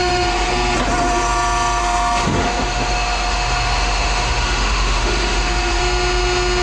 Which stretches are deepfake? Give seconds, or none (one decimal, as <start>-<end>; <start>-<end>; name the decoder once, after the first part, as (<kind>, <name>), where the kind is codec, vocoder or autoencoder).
0.0-0.5 (autoencoder, DAC-VAE); 1.8-5.8